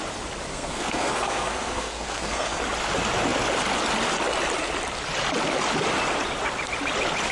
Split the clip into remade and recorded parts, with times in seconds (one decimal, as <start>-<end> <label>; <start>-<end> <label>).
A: 0.0-0.5 recorded; 0.5-2.6 remade; 2.6-7.3 recorded